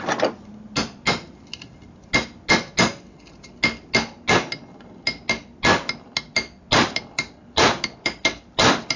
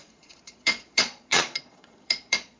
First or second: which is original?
first